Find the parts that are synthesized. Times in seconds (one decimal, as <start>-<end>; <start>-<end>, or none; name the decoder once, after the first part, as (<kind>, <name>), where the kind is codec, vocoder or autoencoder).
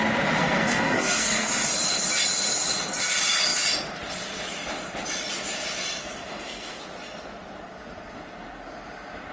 0.4-1.5 (codec, SNAC); 6.0-6.8